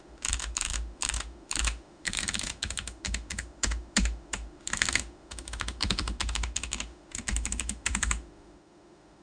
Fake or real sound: fake